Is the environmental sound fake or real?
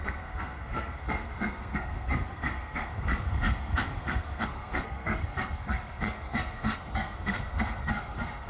fake